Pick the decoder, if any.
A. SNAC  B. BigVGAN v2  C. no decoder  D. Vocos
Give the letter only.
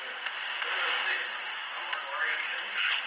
C